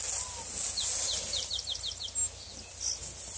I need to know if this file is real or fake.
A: real